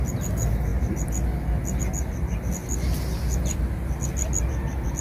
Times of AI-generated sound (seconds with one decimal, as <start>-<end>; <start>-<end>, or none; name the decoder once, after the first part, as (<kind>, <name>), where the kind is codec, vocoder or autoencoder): none